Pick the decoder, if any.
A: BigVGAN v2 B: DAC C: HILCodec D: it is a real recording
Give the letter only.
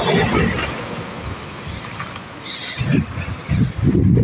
A